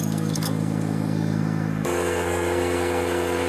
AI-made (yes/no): yes